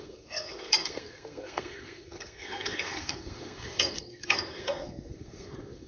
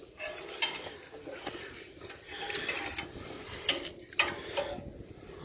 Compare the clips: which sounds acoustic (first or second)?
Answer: second